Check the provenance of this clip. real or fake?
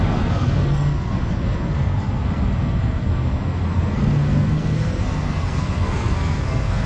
fake